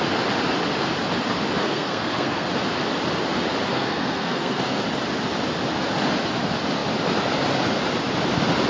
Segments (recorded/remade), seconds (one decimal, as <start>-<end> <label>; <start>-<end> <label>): 0.0-1.6 recorded; 1.6-2.5 remade; 2.5-3.7 recorded; 3.7-4.8 remade; 4.8-8.7 recorded